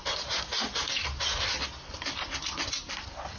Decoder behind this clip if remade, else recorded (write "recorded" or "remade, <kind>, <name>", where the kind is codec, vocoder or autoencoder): recorded